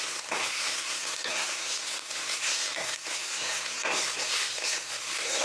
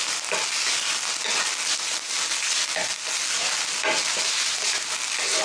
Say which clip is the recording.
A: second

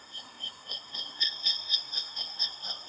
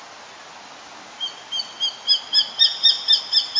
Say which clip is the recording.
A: second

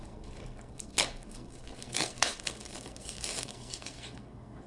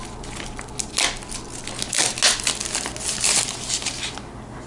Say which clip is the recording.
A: second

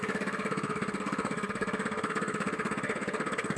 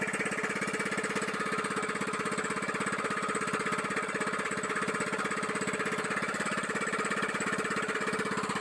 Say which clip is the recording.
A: second